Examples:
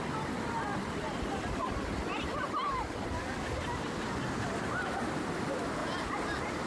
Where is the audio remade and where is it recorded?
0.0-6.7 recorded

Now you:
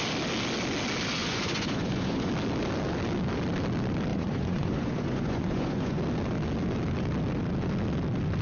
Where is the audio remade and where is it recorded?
0.0-1.2 recorded; 1.2-2.3 remade; 2.3-4.1 recorded; 4.1-6.0 remade; 6.0-8.4 recorded

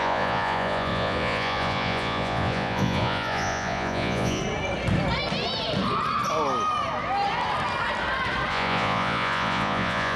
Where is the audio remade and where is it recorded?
0.0-4.4 remade; 4.4-8.5 recorded; 8.5-10.2 remade

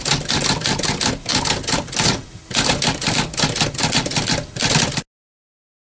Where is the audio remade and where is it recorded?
0.0-6.0 recorded

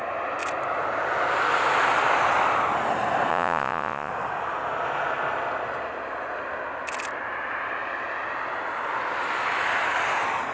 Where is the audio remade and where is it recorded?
0.0-3.3 recorded; 3.3-4.1 remade; 4.1-10.5 recorded